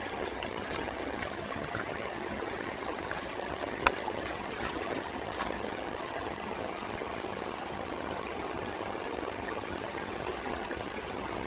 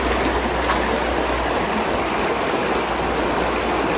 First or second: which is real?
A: second